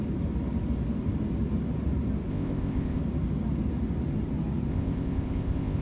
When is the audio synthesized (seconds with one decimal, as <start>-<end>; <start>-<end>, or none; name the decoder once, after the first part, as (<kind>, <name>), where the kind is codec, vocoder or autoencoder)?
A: 2.3-3.0 (codec, ZipCodec); 4.7-5.8